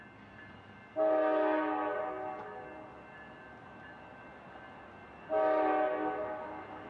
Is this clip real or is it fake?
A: real